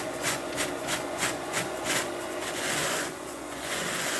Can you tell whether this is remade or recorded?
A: remade